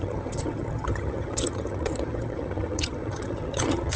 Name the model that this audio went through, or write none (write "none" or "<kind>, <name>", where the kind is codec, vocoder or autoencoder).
vocoder, HiFi-GAN